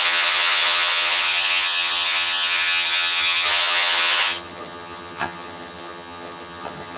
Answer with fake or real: fake